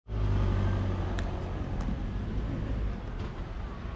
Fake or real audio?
real